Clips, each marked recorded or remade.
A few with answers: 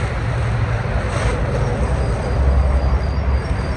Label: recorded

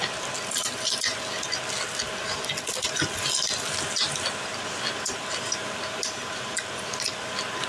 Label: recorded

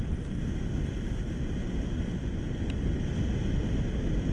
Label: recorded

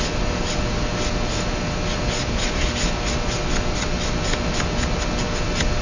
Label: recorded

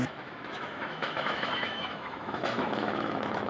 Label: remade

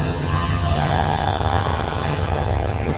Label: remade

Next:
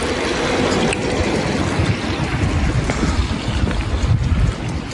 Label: recorded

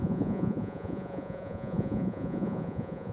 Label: remade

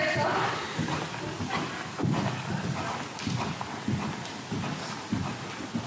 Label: recorded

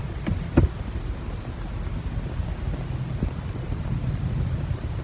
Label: recorded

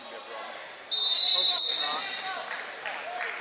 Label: recorded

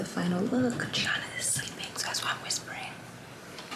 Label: recorded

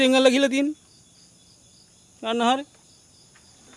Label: recorded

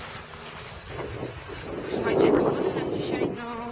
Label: recorded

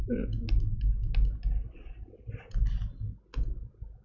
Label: recorded